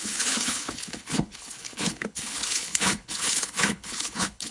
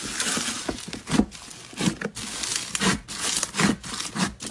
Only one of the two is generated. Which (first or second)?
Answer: first